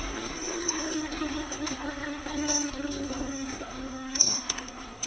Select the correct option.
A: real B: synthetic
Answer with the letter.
B